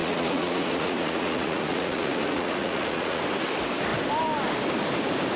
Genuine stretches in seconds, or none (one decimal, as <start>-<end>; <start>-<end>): 3.2-5.4